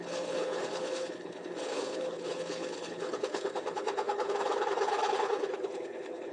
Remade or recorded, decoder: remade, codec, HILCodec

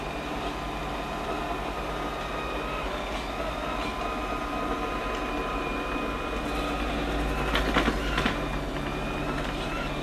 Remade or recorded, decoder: recorded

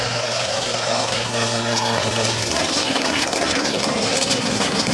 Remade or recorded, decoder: remade, codec, SNAC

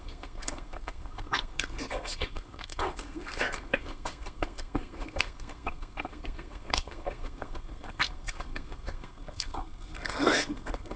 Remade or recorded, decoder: remade, codec, SNAC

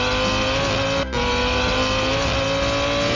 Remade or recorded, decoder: recorded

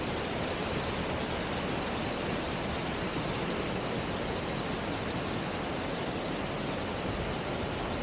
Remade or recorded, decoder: recorded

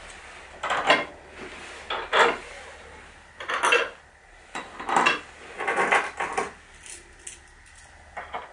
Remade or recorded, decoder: recorded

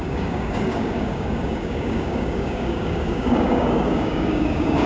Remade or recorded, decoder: remade, codec, DAC